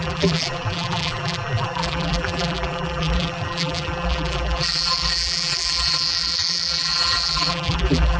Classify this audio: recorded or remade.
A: remade